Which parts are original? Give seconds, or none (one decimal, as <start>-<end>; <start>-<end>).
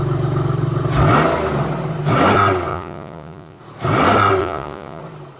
0.0-2.7; 3.6-4.4; 5.0-5.4